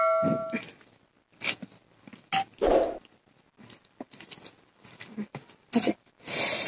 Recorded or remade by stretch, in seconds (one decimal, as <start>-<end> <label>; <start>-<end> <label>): 0.0-6.7 recorded